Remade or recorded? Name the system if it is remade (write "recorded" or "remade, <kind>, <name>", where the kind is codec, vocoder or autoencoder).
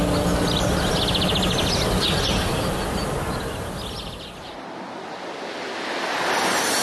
recorded